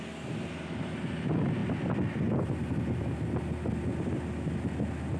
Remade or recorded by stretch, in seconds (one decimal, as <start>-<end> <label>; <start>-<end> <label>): 0.0-5.2 recorded